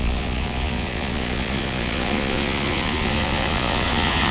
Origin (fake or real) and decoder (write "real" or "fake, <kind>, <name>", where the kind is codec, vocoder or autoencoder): fake, vocoder, Vocos